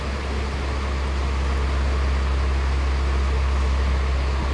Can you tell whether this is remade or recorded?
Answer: recorded